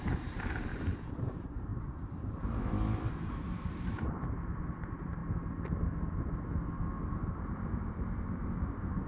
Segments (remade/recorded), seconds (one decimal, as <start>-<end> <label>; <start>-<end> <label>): 0.0-0.7 remade; 0.7-1.2 recorded; 1.2-5.2 remade; 5.2-7.1 recorded; 7.1-9.1 remade